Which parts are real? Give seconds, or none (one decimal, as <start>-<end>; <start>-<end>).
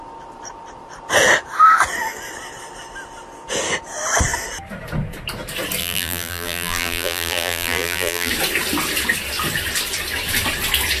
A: 0.0-5.8; 8.3-11.0